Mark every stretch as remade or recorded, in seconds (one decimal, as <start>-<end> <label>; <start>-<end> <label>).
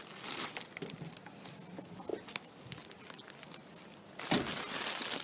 0.0-5.2 recorded